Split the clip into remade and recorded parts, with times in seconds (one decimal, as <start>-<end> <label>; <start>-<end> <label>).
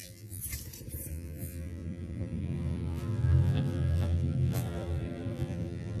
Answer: 0.0-0.4 remade; 0.4-1.1 recorded; 1.1-6.0 remade